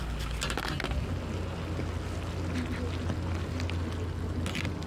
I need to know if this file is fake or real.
real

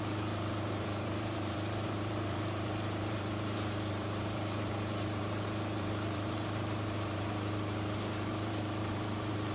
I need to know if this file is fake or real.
fake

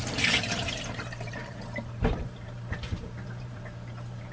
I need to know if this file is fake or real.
fake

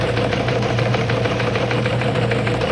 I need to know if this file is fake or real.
fake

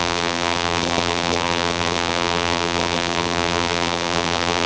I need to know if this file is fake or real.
fake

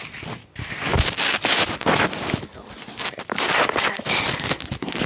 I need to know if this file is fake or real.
real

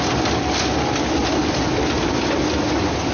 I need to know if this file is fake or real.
real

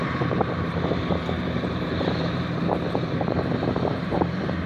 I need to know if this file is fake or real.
fake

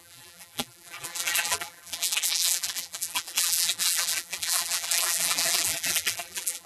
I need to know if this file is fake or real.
fake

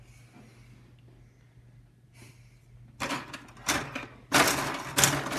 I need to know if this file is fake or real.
real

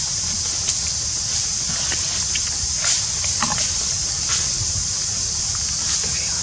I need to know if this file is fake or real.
real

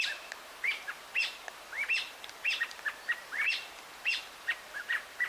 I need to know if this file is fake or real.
fake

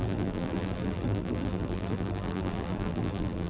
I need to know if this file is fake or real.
fake